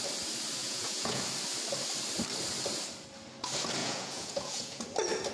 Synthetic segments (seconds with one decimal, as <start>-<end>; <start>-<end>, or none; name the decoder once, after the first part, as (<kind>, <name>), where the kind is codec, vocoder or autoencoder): 0.6-1.2 (vocoder, Vocos); 3.8-4.8